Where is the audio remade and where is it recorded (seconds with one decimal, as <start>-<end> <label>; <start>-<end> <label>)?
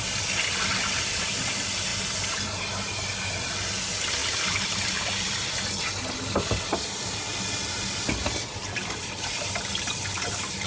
0.0-4.2 recorded; 4.2-8.7 remade; 8.7-10.7 recorded